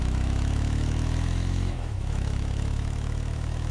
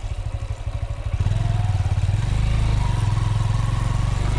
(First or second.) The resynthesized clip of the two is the first